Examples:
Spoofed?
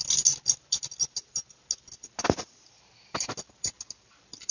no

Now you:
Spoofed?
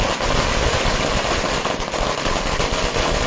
no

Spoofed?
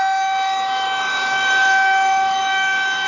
yes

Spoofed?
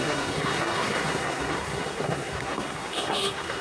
yes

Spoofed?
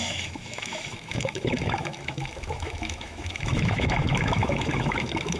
yes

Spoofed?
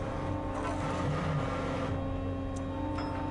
no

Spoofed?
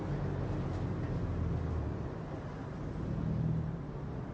no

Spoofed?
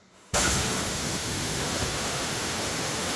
yes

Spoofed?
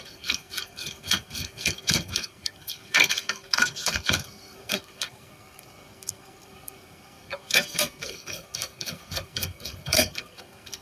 yes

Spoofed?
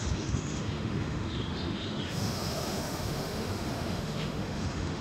yes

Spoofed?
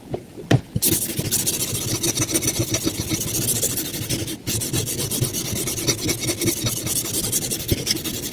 no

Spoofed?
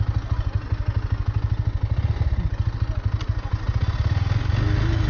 no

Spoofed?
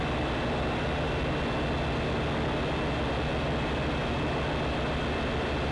no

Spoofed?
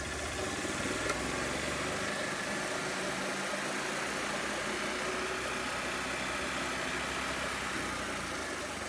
no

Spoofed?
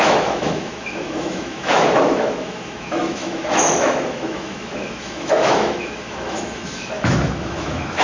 yes